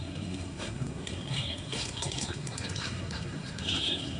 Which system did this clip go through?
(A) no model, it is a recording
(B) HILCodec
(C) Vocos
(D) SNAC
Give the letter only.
D